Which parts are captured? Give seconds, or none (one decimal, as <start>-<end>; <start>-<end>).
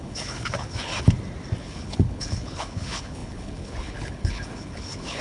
0.9-1.6